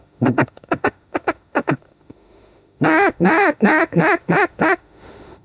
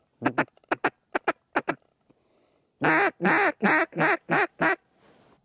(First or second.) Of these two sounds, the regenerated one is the first